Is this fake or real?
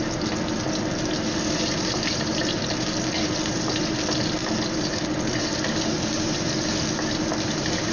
real